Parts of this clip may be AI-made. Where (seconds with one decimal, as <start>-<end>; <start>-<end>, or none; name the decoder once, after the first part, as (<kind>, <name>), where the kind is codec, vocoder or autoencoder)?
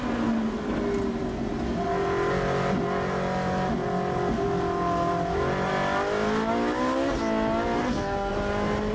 7.8-8.3 (codec, SNAC)